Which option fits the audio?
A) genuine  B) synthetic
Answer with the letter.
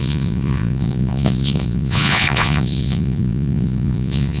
B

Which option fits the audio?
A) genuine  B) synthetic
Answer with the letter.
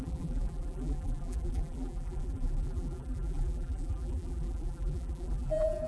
B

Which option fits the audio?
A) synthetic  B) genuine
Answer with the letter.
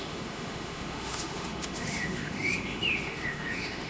A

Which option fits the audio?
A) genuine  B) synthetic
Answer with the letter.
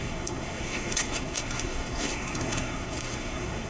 B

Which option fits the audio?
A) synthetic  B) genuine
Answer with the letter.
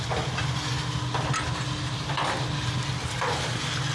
B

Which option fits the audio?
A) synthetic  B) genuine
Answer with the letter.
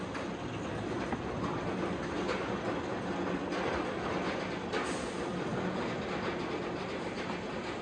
B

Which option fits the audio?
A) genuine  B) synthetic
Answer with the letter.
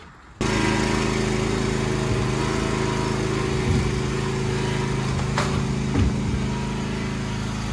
A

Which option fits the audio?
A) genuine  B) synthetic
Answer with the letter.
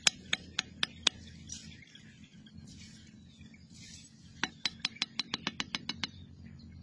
A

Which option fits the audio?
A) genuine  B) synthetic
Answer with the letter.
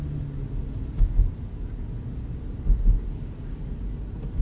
A